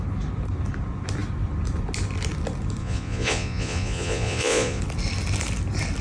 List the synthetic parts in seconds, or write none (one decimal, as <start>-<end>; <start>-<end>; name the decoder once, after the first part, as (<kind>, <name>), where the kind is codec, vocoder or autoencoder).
2.8-4.8 (vocoder, Vocos)